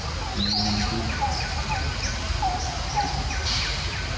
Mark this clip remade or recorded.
recorded